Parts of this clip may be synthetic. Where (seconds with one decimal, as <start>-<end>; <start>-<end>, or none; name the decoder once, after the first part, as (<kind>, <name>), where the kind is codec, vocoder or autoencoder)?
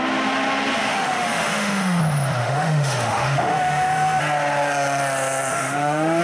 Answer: 0.9-2.0 (autoencoder, DAC-VAE); 2.4-4.2; 5.5-6.2